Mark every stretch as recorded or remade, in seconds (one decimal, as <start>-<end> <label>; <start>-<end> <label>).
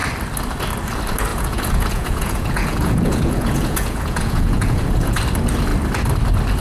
0.0-1.3 recorded; 1.3-5.2 remade; 5.2-6.6 recorded